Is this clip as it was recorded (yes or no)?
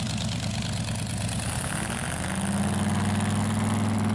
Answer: yes